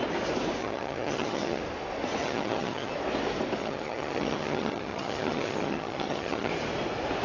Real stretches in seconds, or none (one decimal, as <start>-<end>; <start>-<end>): 0.0-0.6; 1.6-2.2; 2.9-3.6; 6.5-7.2